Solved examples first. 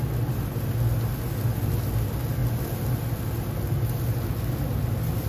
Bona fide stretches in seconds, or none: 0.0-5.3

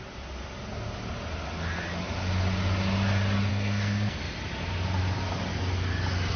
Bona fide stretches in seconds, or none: 0.0-3.5; 4.2-6.4

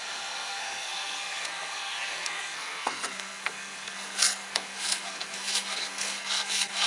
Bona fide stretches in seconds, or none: none